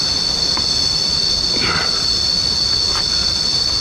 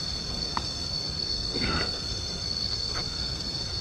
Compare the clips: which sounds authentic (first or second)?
first